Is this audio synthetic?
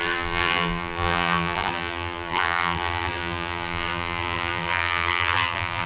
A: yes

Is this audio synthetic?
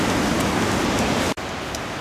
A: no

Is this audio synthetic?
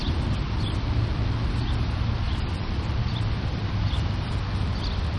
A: no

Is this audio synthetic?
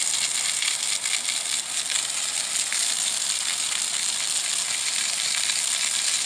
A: no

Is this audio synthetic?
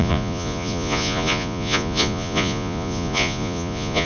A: yes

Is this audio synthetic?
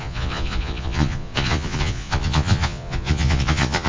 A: yes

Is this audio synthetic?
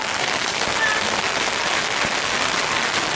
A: no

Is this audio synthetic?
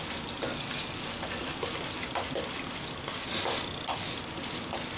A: no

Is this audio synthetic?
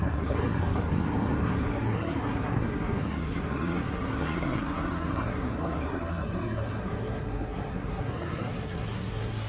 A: yes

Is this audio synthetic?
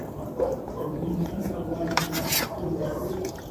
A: yes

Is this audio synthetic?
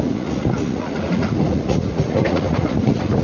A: yes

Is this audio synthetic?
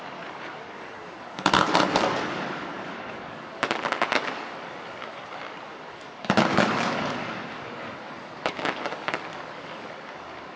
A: yes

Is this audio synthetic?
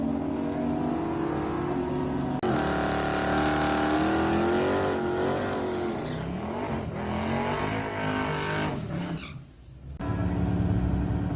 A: no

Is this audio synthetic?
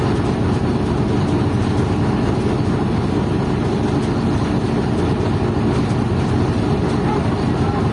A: no